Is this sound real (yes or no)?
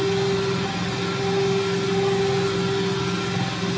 yes